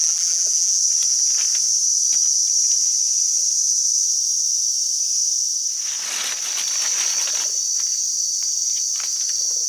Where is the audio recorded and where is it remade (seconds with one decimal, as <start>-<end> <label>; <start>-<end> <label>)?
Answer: 0.0-0.8 remade; 0.8-9.7 recorded